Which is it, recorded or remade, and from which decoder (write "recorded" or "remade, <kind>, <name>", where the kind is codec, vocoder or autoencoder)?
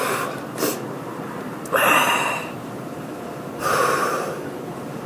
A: remade, vocoder, BigVGAN v2